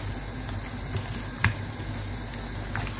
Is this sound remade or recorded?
recorded